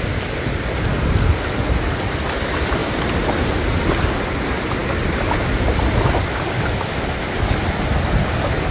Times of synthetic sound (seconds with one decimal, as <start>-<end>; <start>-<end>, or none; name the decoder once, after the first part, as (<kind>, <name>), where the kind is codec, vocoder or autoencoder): none